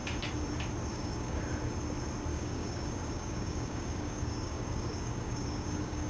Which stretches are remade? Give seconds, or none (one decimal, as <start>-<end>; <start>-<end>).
0.9-1.4; 2.3-6.1